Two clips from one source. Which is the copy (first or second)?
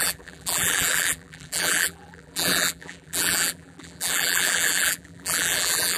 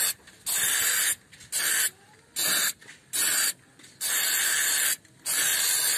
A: first